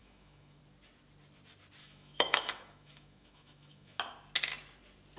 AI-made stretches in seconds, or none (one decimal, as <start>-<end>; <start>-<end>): 0.0-0.6; 1.8-4.0